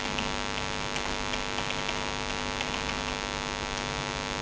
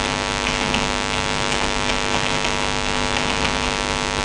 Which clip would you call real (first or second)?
first